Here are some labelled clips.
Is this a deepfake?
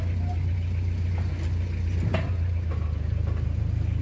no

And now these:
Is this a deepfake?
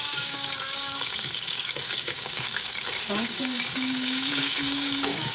yes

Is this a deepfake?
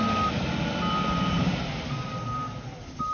no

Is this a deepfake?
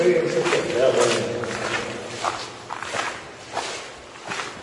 no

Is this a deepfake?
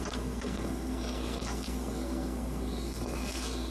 yes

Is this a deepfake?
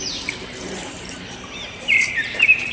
yes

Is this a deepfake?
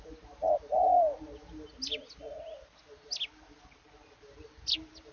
no